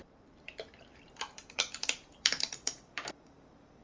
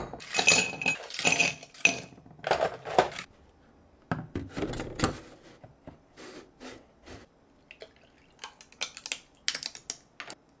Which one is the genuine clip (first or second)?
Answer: second